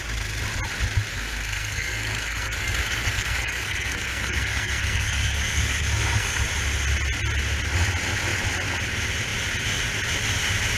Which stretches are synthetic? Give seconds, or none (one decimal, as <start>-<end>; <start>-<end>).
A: 1.1-6.4